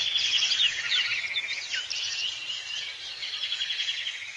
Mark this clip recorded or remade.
recorded